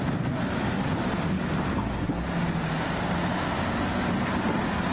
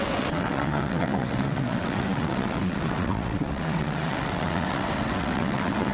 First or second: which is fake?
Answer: second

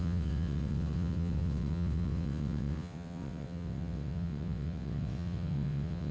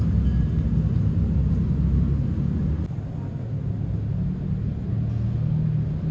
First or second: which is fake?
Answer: first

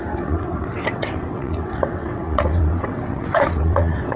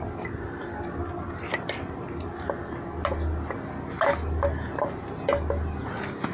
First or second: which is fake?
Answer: first